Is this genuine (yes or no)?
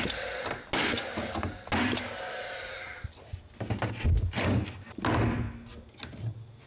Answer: yes